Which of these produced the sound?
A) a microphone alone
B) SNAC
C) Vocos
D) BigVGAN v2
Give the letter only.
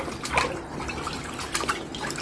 A